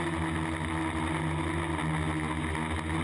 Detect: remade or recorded recorded